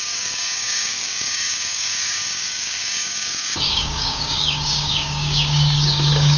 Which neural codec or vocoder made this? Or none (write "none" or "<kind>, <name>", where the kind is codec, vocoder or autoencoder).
codec, DAC